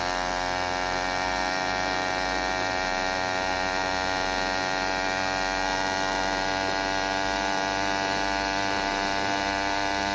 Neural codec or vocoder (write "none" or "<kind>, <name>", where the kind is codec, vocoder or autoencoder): none